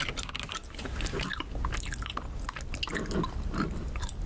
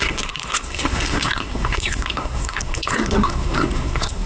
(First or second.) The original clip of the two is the first